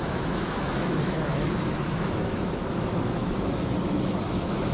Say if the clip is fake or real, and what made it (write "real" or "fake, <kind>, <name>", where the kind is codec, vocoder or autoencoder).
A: fake, autoencoder, DAC-VAE